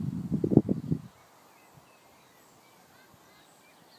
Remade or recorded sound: recorded